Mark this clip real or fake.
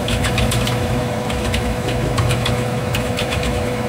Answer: fake